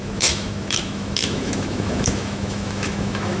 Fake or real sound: fake